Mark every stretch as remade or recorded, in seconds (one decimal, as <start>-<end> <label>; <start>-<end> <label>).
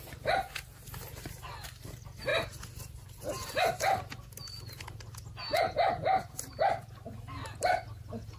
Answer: 0.0-8.4 recorded